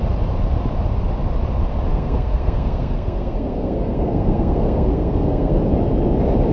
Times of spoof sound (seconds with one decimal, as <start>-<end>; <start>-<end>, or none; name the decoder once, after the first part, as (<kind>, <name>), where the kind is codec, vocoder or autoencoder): 1.9-5.6 (codec, SNAC)